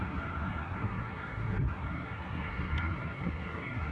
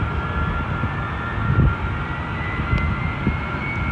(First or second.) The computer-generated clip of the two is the first